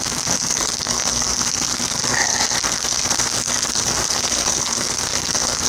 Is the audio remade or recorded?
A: remade